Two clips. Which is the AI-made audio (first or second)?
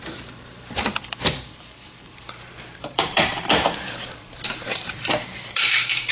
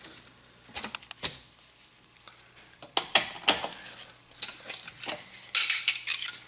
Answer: first